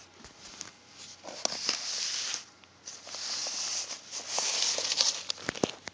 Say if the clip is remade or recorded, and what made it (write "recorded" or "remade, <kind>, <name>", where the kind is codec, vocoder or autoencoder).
recorded